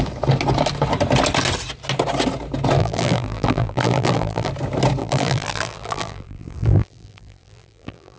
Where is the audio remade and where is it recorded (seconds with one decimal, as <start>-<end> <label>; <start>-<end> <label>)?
0.0-2.8 recorded; 2.8-4.5 remade; 4.5-5.0 recorded; 5.0-8.2 remade